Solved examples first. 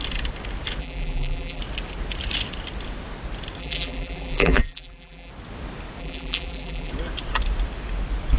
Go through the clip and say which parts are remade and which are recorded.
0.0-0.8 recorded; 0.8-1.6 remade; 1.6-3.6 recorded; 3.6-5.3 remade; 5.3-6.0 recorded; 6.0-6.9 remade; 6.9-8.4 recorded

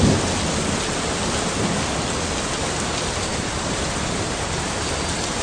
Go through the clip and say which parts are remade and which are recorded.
0.0-3.3 recorded; 3.3-4.8 remade; 4.8-5.4 recorded

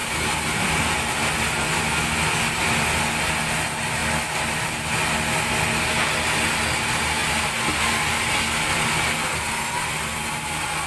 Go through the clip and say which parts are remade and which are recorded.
0.0-10.9 recorded

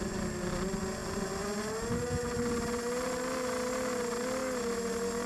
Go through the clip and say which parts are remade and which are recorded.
0.0-5.3 recorded

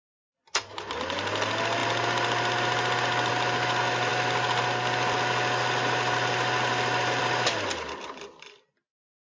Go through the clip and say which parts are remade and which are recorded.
0.0-9.4 recorded